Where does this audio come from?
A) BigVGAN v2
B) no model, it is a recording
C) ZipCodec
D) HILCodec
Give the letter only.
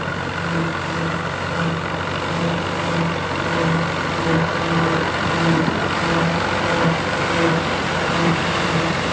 B